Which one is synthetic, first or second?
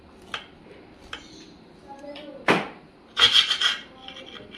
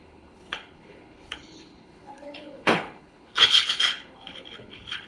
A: second